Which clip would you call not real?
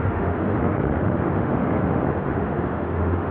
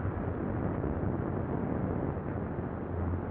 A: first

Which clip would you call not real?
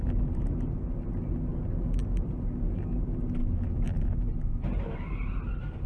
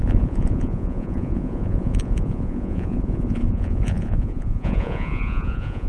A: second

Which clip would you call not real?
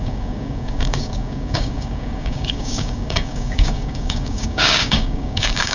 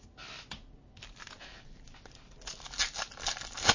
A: first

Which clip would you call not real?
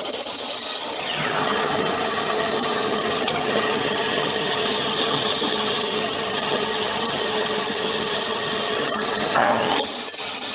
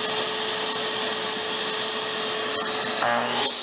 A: first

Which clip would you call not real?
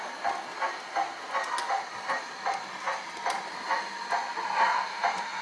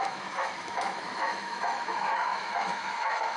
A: second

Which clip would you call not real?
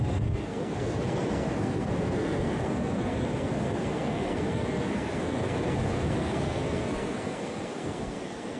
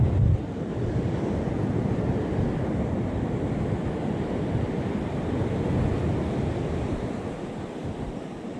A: first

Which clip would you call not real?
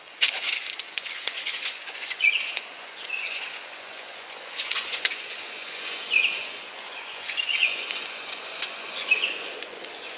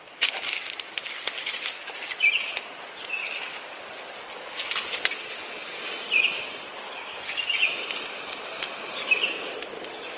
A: first